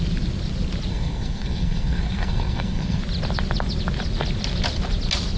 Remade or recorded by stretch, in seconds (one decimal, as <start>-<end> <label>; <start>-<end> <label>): 0.0-0.9 recorded; 0.9-3.0 remade; 3.0-5.4 recorded